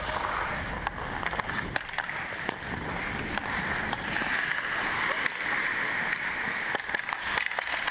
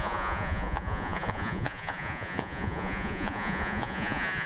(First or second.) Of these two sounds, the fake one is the second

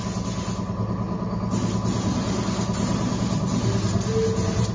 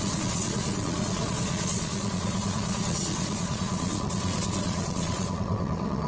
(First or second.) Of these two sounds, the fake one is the second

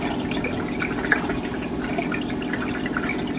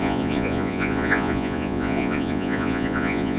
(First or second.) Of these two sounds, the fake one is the second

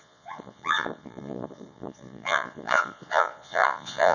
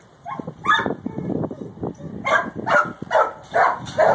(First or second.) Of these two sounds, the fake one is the first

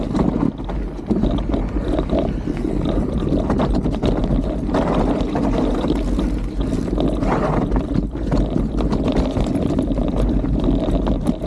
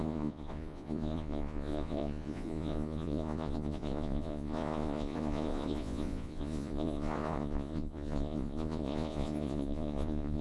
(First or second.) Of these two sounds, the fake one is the second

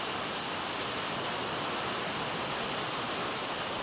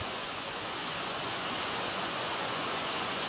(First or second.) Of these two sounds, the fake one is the second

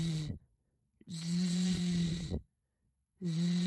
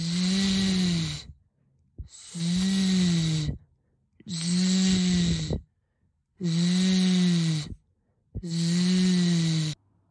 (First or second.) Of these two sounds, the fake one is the first